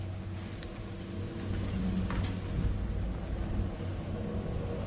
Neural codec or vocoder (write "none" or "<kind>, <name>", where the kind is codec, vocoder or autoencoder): none